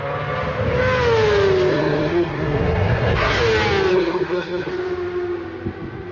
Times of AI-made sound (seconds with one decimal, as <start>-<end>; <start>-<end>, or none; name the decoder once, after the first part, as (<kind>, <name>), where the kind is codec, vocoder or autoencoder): 1.7-3.4 (codec, SNAC); 3.9-4.7